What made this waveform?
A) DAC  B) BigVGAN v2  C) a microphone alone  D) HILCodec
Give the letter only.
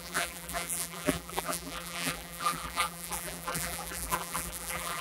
B